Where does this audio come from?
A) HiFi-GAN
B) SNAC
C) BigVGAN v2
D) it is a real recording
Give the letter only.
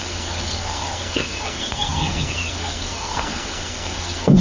B